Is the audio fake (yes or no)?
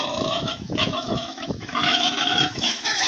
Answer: yes